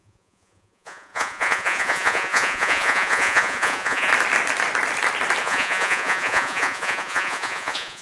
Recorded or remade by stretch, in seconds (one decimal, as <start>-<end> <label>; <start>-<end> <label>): 0.0-4.1 remade; 4.1-5.4 recorded; 5.4-8.0 remade